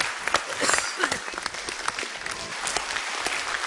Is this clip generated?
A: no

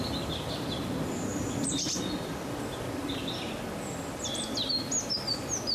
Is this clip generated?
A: no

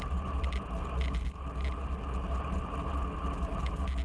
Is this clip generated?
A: no